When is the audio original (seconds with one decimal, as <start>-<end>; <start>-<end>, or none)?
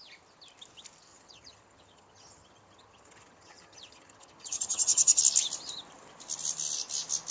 0.0-1.1; 5.2-7.3